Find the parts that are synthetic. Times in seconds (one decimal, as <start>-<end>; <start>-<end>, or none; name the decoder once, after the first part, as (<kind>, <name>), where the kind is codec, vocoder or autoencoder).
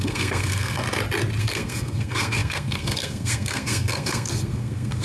0.0-0.8 (codec, SNAC); 1.4-5.0